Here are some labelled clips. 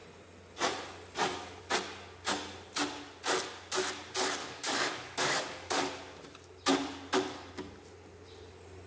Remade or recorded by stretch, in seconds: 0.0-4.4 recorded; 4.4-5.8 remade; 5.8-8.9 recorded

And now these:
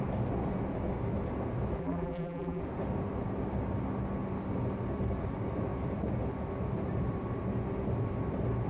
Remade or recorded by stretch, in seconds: 0.0-1.8 recorded; 1.8-2.6 remade; 2.6-8.7 recorded

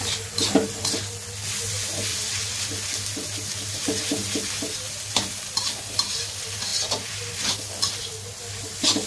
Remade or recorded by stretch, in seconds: 0.0-2.1 recorded; 2.1-2.6 remade; 2.6-9.1 recorded

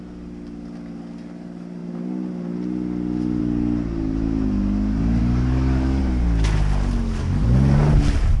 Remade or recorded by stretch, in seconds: 0.0-5.2 recorded; 5.2-6.0 remade; 6.0-7.2 recorded; 7.2-7.9 remade; 7.9-8.4 recorded

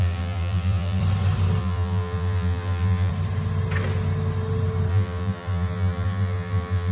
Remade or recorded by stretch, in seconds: 0.0-1.0 remade; 1.0-1.6 recorded; 1.6-3.1 remade; 3.1-4.9 recorded; 4.9-6.9 remade

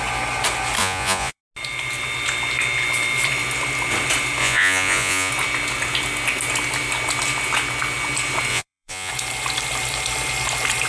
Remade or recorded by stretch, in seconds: 0.0-0.8 recorded; 0.8-1.4 remade; 1.4-4.4 recorded; 4.4-5.3 remade; 5.3-8.5 recorded; 8.5-9.1 remade; 9.1-10.9 recorded

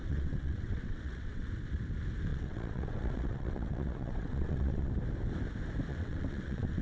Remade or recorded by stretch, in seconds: 0.0-1.5 remade; 1.5-2.3 recorded; 2.3-4.9 remade; 4.9-5.9 recorded; 5.9-6.8 remade

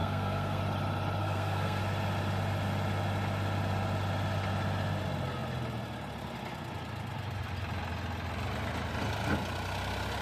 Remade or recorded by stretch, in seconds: 0.0-0.6 remade; 0.6-1.2 recorded; 1.2-1.8 remade; 1.8-10.2 recorded